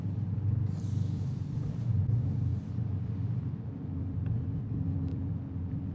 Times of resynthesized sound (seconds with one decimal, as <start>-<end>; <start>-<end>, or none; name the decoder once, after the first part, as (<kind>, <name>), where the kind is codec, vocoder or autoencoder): 0.0-5.9 (vocoder, BigVGAN v2)